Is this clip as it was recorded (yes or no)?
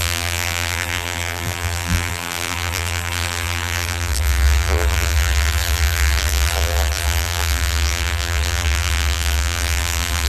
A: no